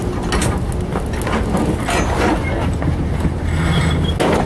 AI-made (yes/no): no